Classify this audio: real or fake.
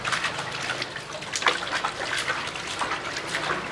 real